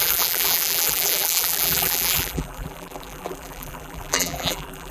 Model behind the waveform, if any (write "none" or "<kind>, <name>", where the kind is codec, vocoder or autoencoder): vocoder, BigVGAN v2